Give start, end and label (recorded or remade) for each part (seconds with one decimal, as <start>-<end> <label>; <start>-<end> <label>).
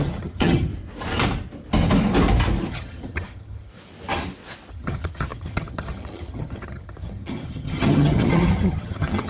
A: 0.0-0.7 remade; 0.7-2.7 recorded; 2.7-3.7 remade; 3.7-4.7 recorded; 4.7-9.3 remade